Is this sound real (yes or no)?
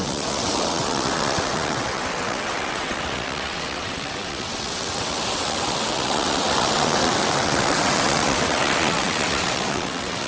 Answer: no